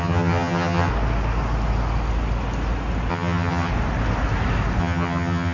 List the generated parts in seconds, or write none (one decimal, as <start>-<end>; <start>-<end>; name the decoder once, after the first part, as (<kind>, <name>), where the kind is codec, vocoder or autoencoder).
0.0-0.9 (vocoder, HiFi-GAN); 3.1-3.7; 4.8-5.5